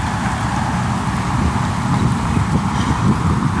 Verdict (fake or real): real